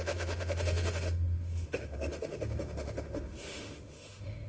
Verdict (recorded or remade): remade